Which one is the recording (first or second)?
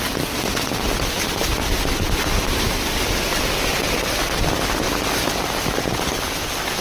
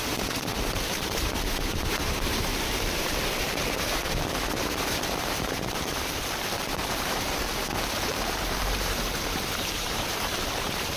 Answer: first